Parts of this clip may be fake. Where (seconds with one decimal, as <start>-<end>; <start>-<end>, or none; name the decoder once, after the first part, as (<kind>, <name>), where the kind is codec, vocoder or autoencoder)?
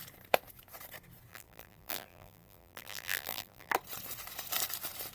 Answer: 1.3-3.7 (vocoder, BigVGAN v2)